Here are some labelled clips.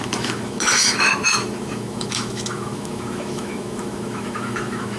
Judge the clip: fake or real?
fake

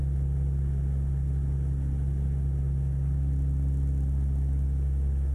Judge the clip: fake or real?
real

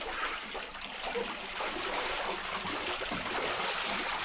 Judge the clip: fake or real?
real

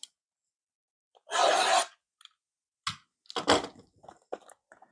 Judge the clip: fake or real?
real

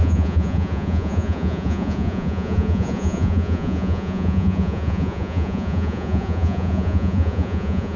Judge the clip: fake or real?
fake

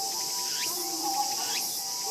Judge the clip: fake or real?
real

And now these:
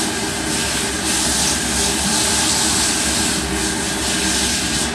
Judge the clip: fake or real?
real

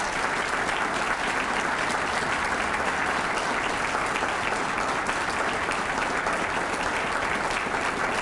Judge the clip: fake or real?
real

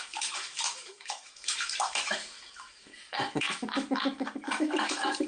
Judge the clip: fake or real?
fake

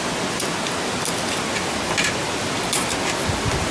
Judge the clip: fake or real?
real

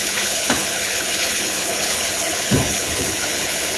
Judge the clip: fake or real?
fake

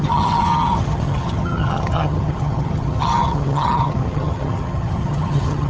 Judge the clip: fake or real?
fake